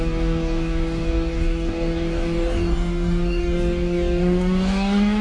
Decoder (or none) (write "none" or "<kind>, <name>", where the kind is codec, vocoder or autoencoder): codec, DAC